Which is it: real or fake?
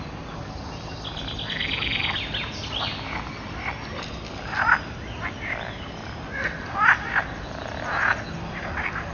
real